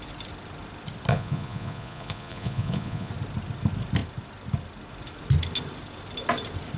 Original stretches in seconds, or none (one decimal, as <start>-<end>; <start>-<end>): 0.0-1.1; 3.1-6.8